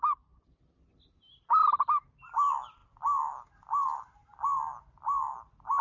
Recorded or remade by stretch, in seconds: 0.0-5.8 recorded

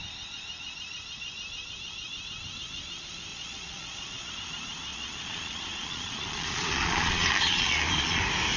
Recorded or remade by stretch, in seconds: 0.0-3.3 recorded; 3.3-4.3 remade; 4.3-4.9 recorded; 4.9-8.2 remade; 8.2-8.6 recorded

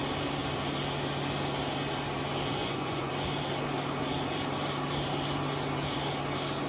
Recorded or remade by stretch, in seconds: 0.0-2.6 recorded; 2.6-3.1 remade; 3.1-6.7 recorded

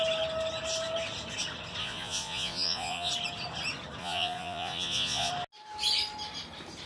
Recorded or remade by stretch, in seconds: 0.0-1.8 recorded; 1.8-3.1 remade; 3.1-4.0 recorded; 4.0-5.3 remade; 5.3-6.9 recorded